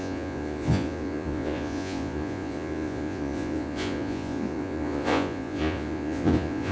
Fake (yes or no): yes